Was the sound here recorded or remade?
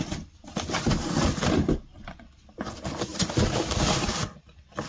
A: recorded